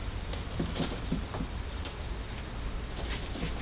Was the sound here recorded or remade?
recorded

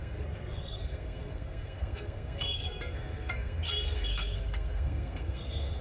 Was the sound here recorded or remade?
remade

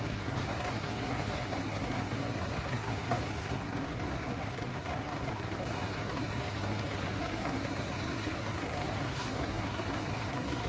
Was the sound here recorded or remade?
remade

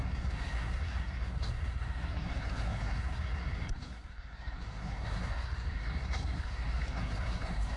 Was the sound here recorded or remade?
remade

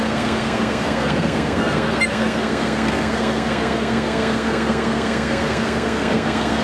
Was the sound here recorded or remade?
remade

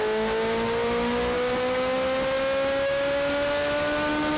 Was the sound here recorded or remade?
recorded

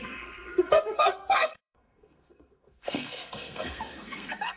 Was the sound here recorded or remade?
remade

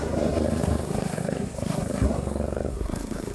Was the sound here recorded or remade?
remade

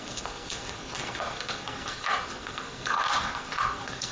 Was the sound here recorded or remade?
remade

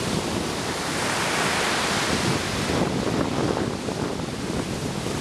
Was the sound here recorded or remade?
recorded